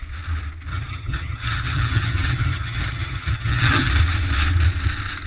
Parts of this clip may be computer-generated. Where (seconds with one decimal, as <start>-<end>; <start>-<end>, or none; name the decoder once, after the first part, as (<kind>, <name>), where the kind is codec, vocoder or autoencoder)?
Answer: 0.7-3.9 (vocoder, HiFi-GAN)